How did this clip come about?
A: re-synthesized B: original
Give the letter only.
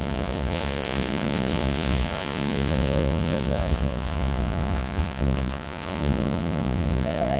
A